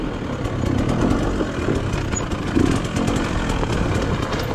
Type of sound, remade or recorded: recorded